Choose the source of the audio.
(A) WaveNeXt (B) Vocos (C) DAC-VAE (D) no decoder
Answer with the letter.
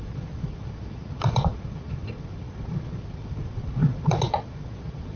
B